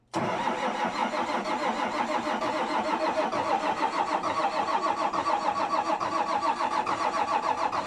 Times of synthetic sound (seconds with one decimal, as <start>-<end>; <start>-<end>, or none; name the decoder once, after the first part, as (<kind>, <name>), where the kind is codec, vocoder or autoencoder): 0.0-1.0 (vocoder, BigVGAN v2); 2.5-7.9